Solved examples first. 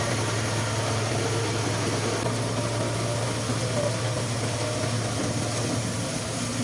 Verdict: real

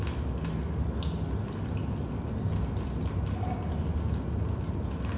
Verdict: real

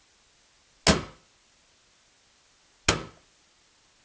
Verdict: real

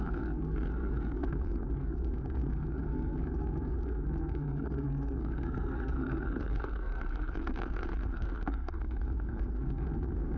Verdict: fake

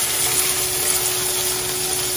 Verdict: real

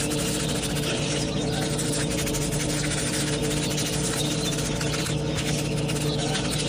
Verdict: real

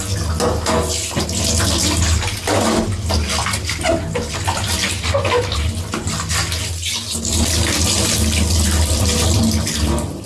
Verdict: real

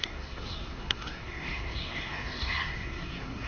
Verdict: fake